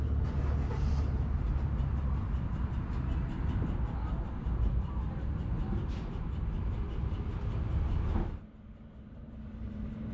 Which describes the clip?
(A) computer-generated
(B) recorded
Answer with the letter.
B